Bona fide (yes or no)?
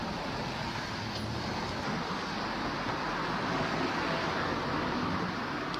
yes